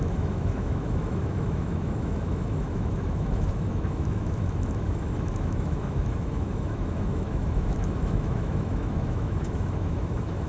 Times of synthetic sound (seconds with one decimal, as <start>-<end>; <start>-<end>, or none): 0.0-10.5